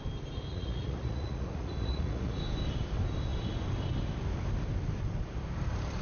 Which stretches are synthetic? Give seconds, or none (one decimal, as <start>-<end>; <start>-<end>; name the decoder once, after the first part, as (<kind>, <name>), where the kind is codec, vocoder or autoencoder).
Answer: 0.5-2.4 (vocoder, Vocos)